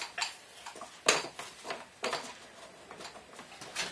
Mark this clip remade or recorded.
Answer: recorded